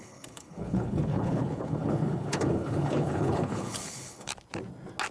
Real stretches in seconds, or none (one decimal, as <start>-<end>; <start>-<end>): 4.3-5.1